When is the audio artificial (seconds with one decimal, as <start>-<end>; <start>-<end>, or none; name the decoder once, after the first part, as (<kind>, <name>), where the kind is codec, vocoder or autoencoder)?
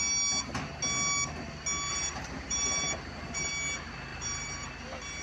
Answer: 1.9-3.5 (vocoder, BigVGAN v2); 4.1-4.7